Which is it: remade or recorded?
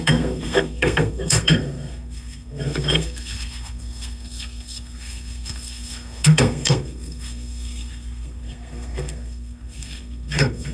remade